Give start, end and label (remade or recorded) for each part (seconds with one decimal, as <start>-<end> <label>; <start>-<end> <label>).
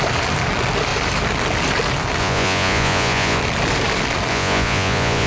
0.0-2.2 recorded; 2.2-3.4 remade; 3.4-4.3 recorded; 4.3-5.3 remade